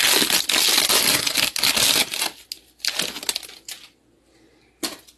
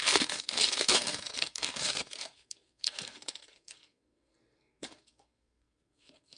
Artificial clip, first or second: second